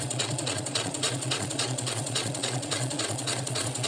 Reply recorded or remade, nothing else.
remade